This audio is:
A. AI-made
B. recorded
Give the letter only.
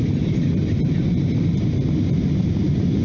A